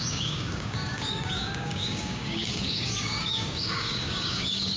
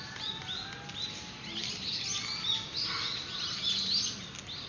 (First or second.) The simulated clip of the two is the first